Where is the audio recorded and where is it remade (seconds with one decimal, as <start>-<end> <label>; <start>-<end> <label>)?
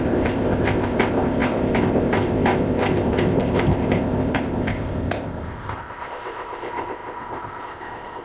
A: 0.0-8.2 remade